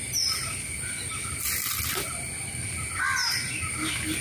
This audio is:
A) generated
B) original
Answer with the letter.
B